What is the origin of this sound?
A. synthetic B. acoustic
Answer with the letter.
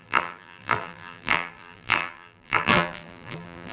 A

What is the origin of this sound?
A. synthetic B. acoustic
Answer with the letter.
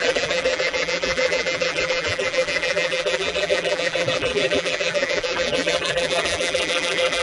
A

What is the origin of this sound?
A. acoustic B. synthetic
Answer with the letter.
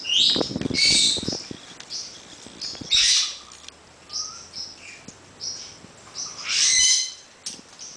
A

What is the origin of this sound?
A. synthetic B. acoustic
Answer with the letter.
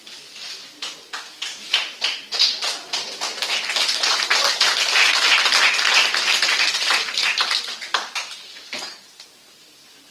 B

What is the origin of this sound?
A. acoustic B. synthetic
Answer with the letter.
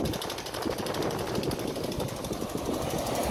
B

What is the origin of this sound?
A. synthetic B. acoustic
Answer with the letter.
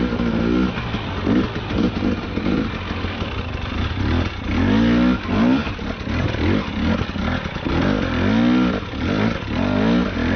B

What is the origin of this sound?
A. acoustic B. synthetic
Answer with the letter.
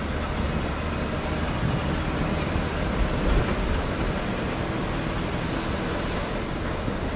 A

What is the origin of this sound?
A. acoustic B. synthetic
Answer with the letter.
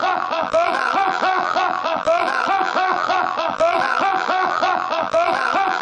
B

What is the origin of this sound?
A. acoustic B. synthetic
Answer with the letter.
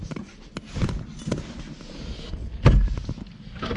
A